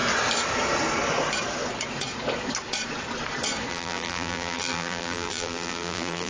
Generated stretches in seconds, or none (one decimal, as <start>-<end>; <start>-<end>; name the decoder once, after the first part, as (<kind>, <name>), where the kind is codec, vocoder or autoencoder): 3.7-6.3 (vocoder, BigVGAN v2)